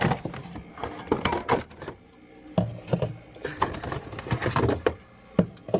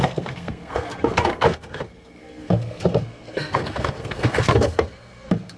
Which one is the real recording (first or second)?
first